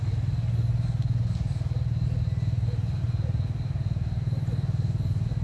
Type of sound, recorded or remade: recorded